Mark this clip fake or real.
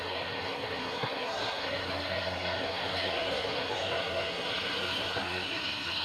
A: fake